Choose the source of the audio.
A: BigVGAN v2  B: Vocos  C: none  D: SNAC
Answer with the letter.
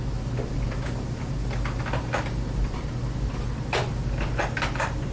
C